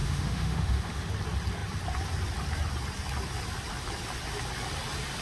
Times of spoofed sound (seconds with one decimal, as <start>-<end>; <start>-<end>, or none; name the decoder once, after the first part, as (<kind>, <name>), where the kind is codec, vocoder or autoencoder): 0.0-1.1 (autoencoder, DAC-VAE)